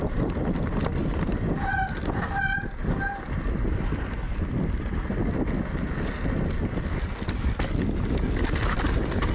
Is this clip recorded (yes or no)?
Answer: yes